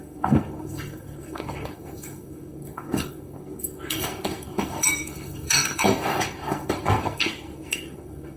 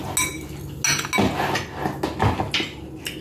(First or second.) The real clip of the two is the second